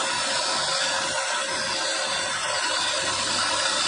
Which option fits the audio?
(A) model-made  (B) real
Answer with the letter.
B